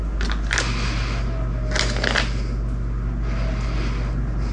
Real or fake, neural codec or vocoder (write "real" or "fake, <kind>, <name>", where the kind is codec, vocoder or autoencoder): real